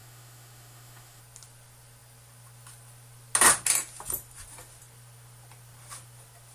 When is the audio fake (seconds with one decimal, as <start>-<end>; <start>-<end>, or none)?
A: 0.0-1.2